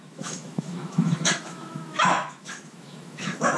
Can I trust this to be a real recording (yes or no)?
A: no